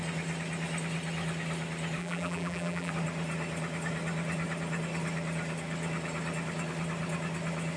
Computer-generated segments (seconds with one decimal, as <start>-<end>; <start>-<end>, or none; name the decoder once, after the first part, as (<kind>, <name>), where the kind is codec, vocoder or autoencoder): 2.0-2.9 (vocoder, BigVGAN v2)